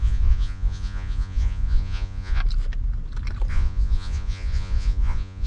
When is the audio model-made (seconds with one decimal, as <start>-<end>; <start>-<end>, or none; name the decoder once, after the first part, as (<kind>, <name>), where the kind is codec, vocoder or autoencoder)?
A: 0.0-2.4 (vocoder, Vocos); 3.5-5.5